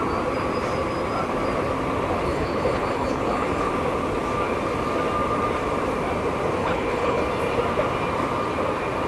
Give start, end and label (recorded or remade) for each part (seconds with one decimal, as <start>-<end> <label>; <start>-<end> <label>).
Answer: 0.0-2.3 recorded; 2.3-3.7 remade; 3.7-6.6 recorded; 6.6-7.2 remade; 7.2-9.1 recorded